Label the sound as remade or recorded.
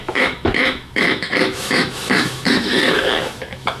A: remade